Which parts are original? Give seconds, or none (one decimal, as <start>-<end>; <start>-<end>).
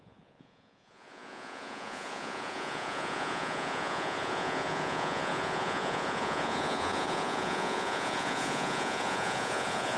none